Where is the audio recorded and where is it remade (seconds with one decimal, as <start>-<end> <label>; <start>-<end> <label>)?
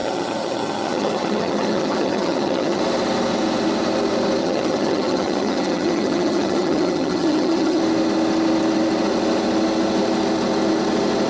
0.0-2.8 remade; 2.8-4.4 recorded; 4.4-7.8 remade; 7.8-11.3 recorded